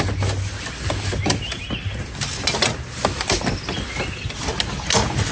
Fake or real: real